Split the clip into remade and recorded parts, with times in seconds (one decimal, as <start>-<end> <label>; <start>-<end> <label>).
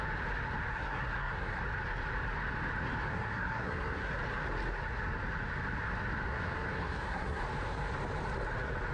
0.0-0.7 recorded; 0.7-1.6 remade; 1.6-3.1 recorded; 3.1-4.1 remade; 4.1-6.3 recorded; 6.3-7.4 remade; 7.4-8.9 recorded